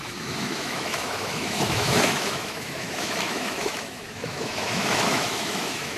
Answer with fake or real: fake